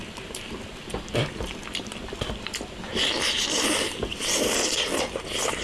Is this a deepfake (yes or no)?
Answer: no